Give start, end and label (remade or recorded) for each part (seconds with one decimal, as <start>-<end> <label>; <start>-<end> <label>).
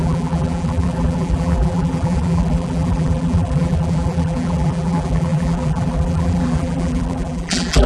0.0-7.9 remade